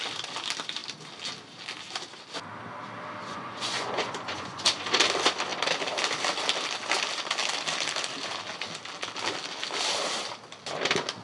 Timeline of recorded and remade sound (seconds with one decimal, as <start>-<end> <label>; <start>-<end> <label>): 0.0-3.3 recorded; 3.3-4.6 remade; 4.6-11.2 recorded